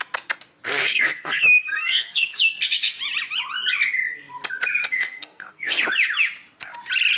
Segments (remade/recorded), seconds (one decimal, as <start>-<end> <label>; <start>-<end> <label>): 0.0-0.8 recorded; 0.8-2.4 remade; 2.4-4.8 recorded; 4.8-5.8 remade; 5.8-7.2 recorded